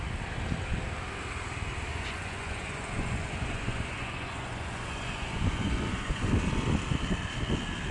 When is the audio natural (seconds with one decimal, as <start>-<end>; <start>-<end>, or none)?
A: 0.0-1.9; 6.3-7.9